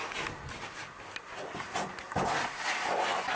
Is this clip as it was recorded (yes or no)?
yes